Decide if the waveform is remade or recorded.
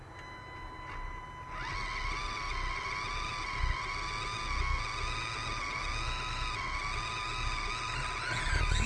recorded